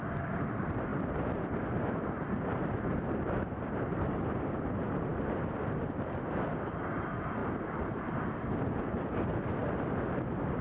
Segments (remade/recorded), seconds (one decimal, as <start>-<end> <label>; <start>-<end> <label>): 0.0-0.9 recorded; 0.9-3.7 remade; 3.7-5.1 recorded; 5.1-5.6 remade; 5.6-7.4 recorded; 7.4-8.2 remade; 8.2-9.6 recorded; 9.6-10.6 remade